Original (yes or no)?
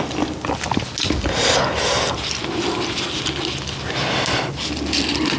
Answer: yes